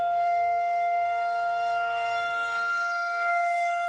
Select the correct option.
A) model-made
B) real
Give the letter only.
A